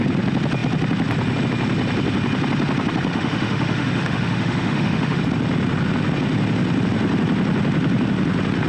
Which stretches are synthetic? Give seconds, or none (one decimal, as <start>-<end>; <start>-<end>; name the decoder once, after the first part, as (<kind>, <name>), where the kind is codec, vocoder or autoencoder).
3.1-5.2 (autoencoder, DAC-VAE)